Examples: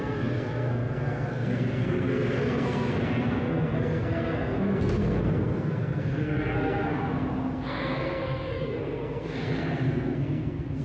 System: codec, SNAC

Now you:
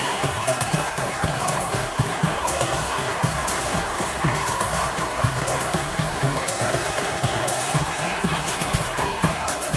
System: codec, SNAC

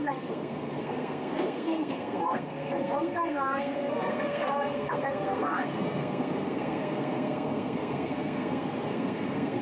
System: codec, SNAC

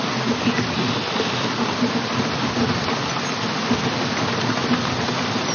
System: none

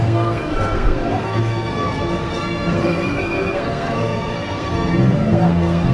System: codec, SNAC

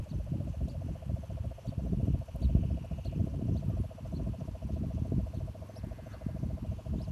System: none